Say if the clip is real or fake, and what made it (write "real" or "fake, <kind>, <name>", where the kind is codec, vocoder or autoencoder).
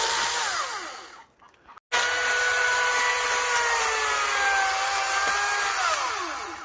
real